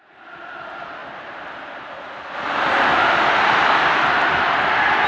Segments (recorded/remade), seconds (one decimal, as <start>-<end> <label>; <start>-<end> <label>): 0.0-5.1 recorded